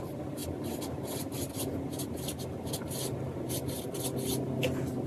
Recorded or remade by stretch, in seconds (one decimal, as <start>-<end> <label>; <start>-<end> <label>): 0.0-5.1 recorded